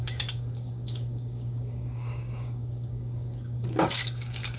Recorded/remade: remade